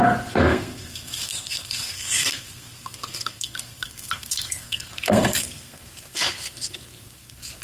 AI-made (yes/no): yes